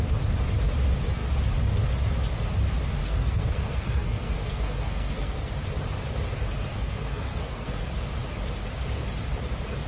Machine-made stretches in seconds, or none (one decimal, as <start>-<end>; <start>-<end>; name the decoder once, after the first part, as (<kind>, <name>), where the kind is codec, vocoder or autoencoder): 3.0-5.5 (codec, SNAC); 6.7-7.8